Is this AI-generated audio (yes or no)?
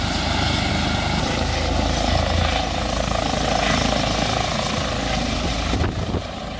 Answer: no